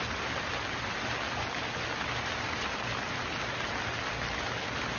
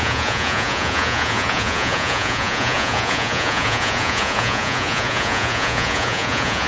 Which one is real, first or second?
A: first